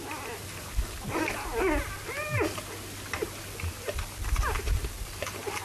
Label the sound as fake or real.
real